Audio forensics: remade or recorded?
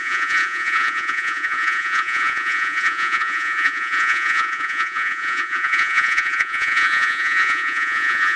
remade